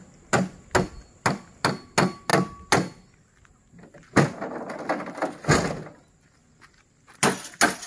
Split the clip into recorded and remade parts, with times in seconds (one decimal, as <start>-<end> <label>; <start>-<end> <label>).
0.0-7.9 recorded